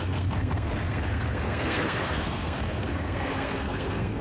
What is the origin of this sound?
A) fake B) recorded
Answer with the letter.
A